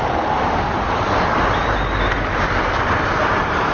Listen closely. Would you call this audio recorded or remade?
recorded